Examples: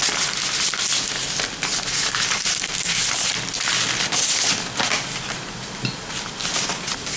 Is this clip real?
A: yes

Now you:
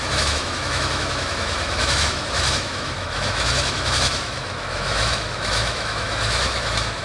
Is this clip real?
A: no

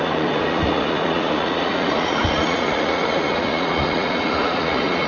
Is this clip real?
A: no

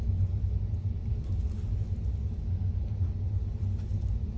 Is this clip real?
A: yes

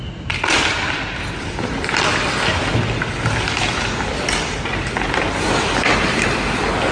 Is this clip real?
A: yes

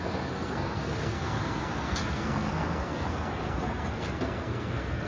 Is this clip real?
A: no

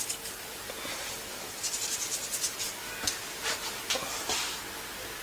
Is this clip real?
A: yes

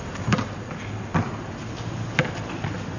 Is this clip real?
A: yes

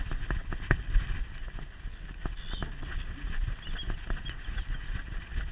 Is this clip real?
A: yes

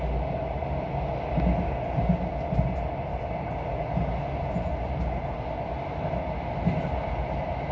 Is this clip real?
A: yes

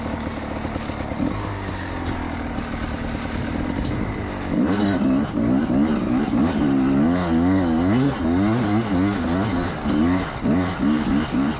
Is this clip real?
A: yes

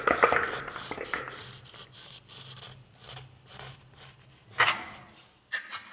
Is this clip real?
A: yes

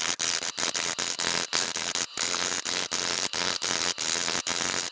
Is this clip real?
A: yes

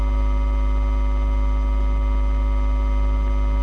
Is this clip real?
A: yes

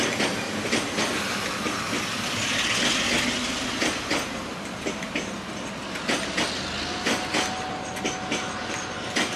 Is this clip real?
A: yes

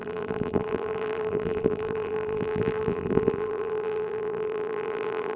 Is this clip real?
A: no